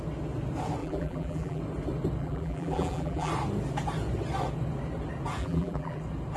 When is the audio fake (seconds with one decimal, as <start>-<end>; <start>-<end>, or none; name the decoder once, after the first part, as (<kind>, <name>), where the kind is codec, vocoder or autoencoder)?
0.8-1.6 (vocoder, BigVGAN v2); 2.2-3.3; 5.4-6.0